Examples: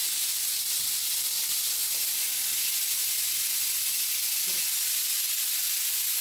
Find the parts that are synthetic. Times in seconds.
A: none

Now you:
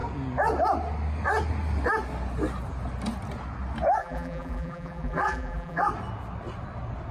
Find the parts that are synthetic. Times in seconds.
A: 4.0-5.9 (vocoder, BigVGAN v2)